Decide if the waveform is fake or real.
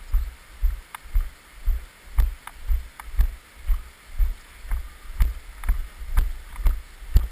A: real